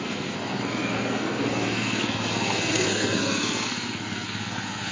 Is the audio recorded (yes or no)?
no